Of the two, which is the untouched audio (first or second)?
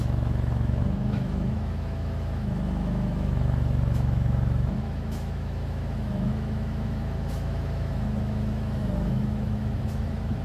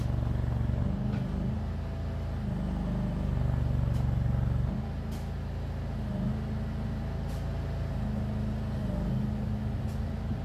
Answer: second